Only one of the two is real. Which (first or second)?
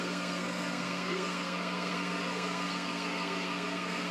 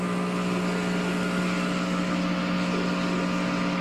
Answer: second